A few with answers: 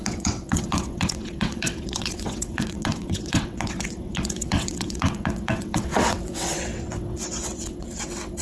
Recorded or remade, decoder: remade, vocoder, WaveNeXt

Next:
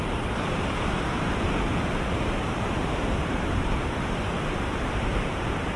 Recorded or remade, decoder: remade, vocoder, BigVGAN v2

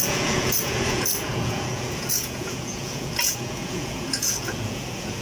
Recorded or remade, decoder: remade, vocoder, Vocos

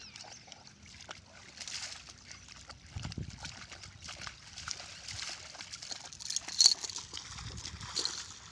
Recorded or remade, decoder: recorded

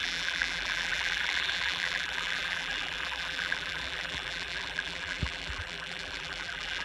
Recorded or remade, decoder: remade, vocoder, BigVGAN v2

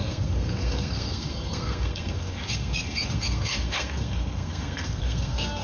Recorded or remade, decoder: remade, codec, SNAC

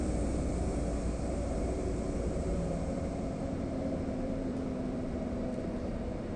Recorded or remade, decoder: remade, vocoder, BigVGAN v2